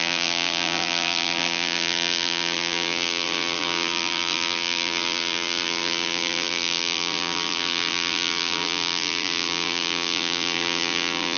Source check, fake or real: fake